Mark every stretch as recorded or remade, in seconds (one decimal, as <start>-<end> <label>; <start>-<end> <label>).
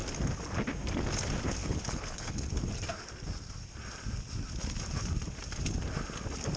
0.0-1.6 recorded; 1.6-2.5 remade; 2.5-6.6 recorded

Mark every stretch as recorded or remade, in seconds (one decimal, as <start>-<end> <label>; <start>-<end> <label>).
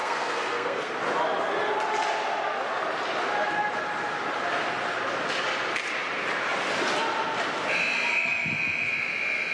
0.0-0.9 remade; 0.9-9.5 recorded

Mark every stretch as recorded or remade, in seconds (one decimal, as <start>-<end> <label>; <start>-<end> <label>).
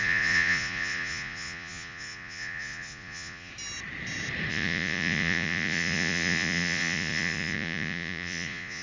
0.0-3.5 remade; 3.5-4.5 recorded; 4.5-8.8 remade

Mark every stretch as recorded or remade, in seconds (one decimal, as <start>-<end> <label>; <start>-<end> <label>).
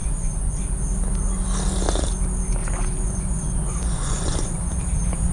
0.0-0.6 remade; 0.6-2.6 recorded; 2.6-4.6 remade; 4.6-5.3 recorded